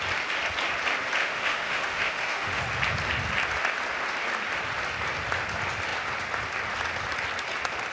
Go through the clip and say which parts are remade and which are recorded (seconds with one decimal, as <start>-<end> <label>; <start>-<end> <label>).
0.0-1.2 recorded; 1.2-2.6 remade; 2.6-7.9 recorded